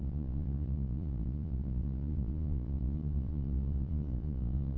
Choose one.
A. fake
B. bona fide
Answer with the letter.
A